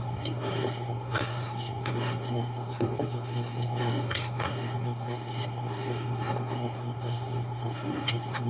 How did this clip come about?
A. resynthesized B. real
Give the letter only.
A